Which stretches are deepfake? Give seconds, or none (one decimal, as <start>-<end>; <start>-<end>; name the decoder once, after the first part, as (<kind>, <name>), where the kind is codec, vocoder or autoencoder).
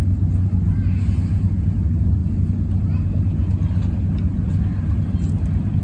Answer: none